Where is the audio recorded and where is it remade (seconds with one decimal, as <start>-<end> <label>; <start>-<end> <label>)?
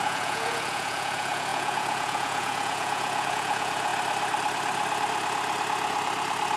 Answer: 0.0-3.9 remade; 3.9-6.6 recorded